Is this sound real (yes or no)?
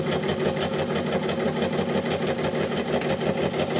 yes